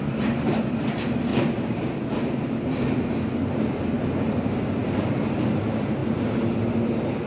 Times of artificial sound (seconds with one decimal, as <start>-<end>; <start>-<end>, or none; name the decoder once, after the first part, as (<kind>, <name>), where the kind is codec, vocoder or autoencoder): 1.3-2.4 (vocoder, BigVGAN v2)